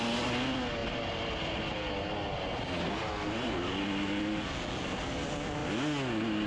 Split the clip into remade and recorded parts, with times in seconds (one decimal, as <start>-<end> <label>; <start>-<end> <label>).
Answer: 0.0-6.5 recorded